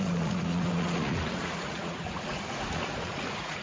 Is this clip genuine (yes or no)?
no